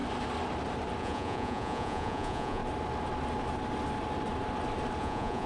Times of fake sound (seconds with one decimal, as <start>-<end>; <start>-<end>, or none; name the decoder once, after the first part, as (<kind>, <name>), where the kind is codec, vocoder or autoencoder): 1.0-2.6 (vocoder, Vocos); 5.0-5.5